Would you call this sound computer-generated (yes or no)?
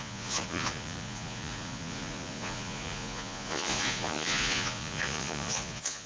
yes